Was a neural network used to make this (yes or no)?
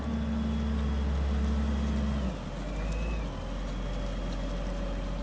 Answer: no